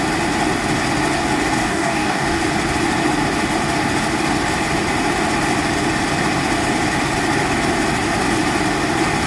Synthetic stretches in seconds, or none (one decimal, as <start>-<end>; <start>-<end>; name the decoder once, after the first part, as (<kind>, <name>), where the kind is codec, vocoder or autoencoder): 1.6-2.4 (codec, DAC)